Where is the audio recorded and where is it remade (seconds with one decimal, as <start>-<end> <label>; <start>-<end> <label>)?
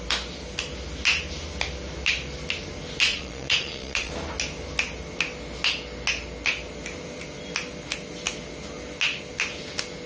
0.0-3.1 recorded; 3.1-4.1 remade; 4.1-10.1 recorded